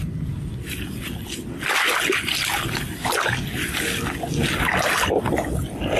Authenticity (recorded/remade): recorded